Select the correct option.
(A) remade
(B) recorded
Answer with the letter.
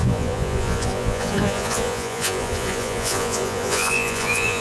A